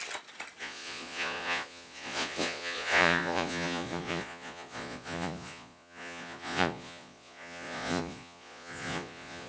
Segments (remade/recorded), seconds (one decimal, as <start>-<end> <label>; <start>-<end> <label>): 0.0-0.6 recorded; 0.6-9.5 remade